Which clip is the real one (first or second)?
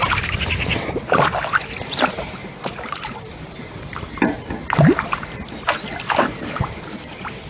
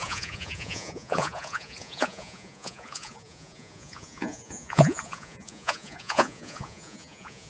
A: first